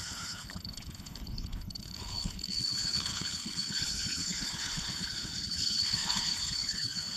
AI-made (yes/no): yes